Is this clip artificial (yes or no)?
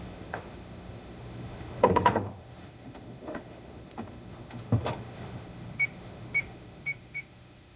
yes